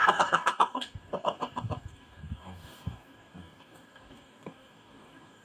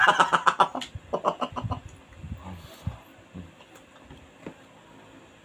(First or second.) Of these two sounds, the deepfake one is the first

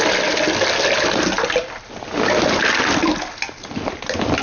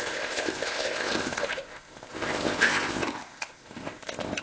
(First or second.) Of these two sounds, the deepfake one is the second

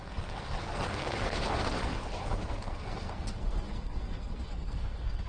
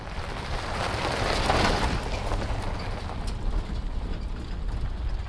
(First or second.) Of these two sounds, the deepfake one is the first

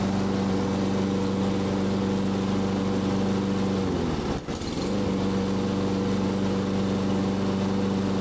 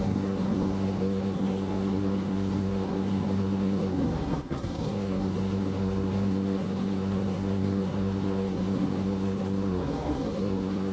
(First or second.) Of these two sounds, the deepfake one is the second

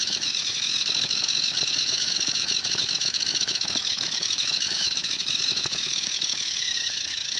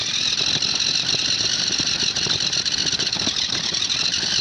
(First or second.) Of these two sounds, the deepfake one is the first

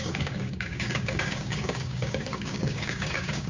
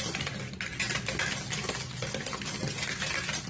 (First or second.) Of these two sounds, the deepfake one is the first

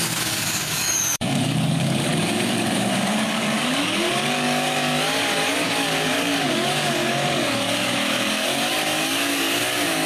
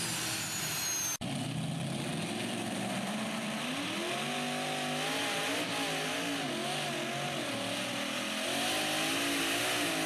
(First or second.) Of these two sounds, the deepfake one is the first